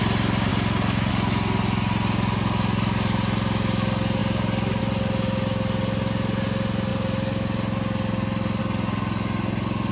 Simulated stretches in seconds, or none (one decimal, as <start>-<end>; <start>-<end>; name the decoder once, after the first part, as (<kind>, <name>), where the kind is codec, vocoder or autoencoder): 0.5-1.1 (vocoder, BigVGAN v2)